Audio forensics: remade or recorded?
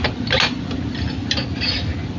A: recorded